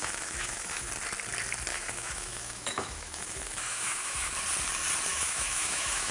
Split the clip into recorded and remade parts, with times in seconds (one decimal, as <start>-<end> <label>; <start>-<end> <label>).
0.0-0.9 remade; 0.9-1.7 recorded; 1.7-4.3 remade; 4.3-5.1 recorded; 5.1-6.1 remade